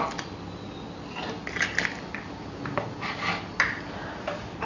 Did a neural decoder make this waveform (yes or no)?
no